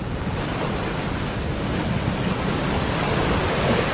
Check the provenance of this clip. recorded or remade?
recorded